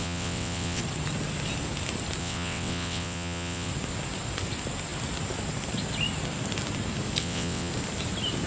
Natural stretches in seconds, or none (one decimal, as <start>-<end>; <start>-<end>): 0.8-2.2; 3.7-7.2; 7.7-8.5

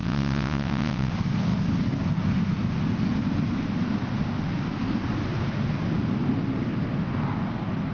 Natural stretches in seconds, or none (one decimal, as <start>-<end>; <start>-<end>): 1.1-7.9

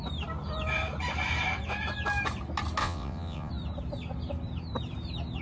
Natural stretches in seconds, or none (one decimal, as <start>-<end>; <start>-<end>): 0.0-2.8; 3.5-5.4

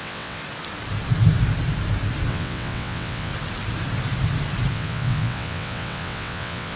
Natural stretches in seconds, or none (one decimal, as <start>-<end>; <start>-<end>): 0.4-2.3; 3.3-4.7

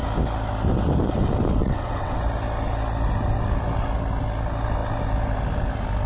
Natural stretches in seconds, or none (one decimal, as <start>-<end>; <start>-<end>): 0.0-1.6; 2.2-6.1